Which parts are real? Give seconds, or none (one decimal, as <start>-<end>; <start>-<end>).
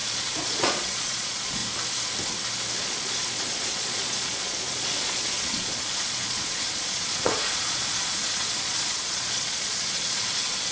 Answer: 1.6-2.8